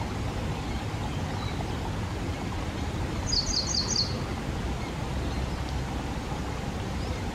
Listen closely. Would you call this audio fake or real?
real